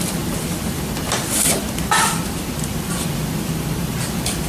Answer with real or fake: fake